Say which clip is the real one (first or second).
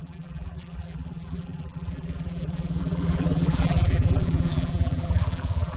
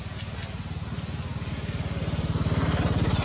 second